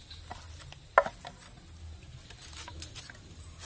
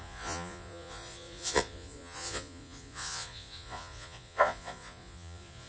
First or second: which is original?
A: first